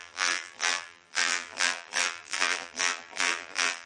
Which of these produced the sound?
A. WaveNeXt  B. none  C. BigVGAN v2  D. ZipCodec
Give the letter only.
C